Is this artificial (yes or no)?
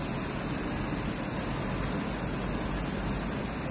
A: no